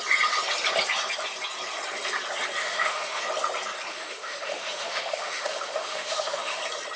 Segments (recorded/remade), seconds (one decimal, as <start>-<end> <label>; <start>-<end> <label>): 0.0-2.6 recorded; 2.6-3.2 remade; 3.2-3.9 recorded; 3.9-6.6 remade; 6.6-7.0 recorded